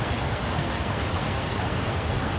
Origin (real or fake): fake